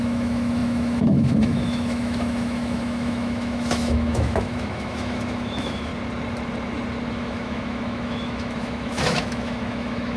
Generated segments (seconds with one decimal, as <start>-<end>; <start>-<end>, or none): 0.0-5.9; 7.1-10.2